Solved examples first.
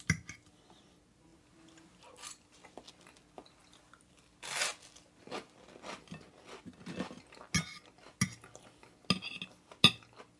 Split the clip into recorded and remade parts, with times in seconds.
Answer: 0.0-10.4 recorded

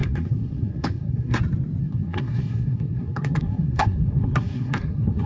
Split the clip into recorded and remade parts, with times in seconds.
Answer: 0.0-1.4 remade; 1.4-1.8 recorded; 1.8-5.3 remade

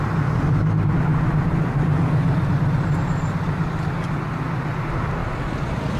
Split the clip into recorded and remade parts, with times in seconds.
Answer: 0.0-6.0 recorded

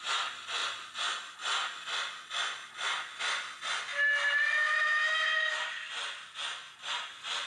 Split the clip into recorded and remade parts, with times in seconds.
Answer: 0.0-7.5 recorded

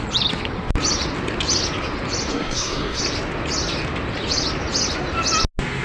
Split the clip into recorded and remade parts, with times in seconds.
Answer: 0.0-2.3 recorded; 2.3-3.0 remade; 3.0-5.8 recorded